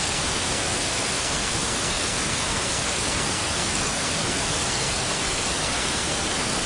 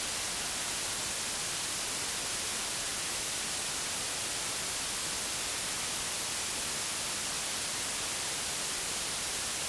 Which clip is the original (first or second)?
second